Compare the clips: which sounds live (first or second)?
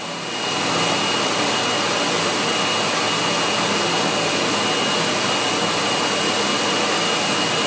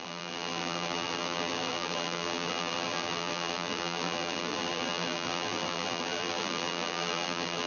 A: first